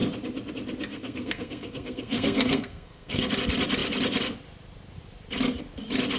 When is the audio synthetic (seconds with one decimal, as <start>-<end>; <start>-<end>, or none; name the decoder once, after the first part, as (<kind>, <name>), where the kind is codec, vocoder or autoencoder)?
0.9-3.3 (codec, SNAC)